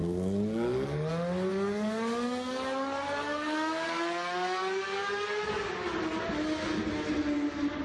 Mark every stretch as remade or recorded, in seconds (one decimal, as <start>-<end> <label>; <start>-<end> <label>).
0.0-1.1 remade; 1.1-1.5 recorded; 1.5-5.7 remade; 5.7-7.8 recorded